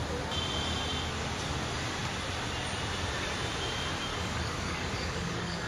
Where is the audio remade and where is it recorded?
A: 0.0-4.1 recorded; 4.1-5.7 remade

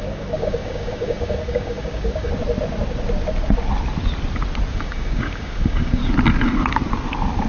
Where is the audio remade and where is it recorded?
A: 0.0-2.3 remade; 2.3-4.7 recorded; 4.7-6.0 remade; 6.0-7.5 recorded

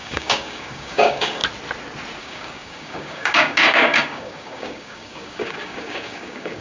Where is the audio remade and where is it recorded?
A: 0.0-1.4 remade; 1.4-2.2 recorded; 2.2-6.6 remade

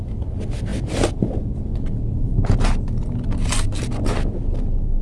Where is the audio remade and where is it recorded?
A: 0.0-5.0 recorded

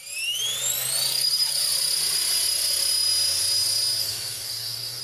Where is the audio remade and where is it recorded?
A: 0.0-4.0 recorded; 4.0-5.0 remade